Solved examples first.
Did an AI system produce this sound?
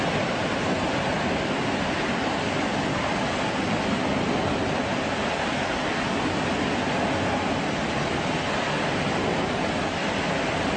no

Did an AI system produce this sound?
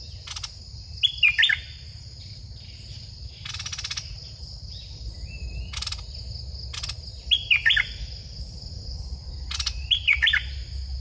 no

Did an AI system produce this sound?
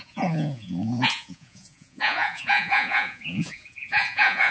yes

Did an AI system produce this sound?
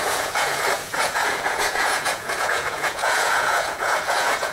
yes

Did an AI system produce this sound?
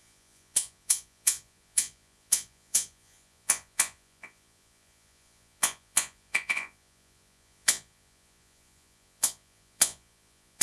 yes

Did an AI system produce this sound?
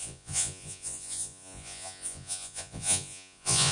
yes